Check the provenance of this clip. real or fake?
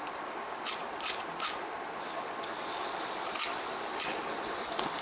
real